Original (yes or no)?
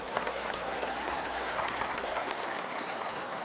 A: no